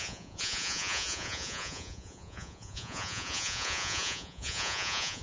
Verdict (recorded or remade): remade